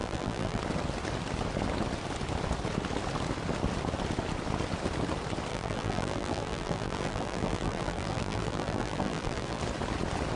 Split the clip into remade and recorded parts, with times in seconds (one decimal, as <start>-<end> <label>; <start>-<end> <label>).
0.0-0.6 remade; 0.6-5.5 recorded; 5.5-9.6 remade; 9.6-10.4 recorded